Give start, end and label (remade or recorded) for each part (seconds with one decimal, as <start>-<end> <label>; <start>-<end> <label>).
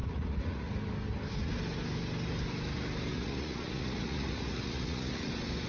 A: 0.0-0.7 remade; 0.7-3.1 recorded; 3.1-5.3 remade; 5.3-5.7 recorded